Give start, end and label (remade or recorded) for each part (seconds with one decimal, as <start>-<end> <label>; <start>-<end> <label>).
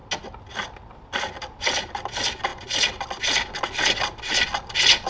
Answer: 0.0-5.1 recorded